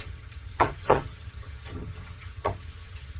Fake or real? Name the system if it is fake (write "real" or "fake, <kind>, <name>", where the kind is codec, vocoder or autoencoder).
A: fake, vocoder, HiFi-GAN